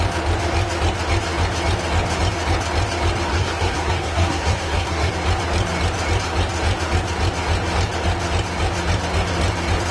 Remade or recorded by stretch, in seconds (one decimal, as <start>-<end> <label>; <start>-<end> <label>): 0.0-3.3 recorded; 3.3-5.1 remade; 5.1-9.9 recorded